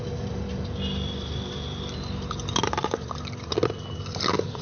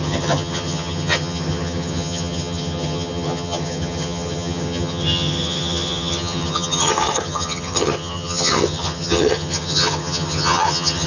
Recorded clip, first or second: first